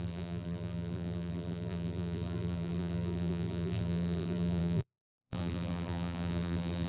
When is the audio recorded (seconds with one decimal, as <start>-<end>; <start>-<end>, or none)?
none